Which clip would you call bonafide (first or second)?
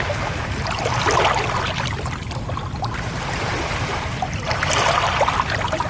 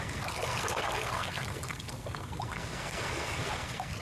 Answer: first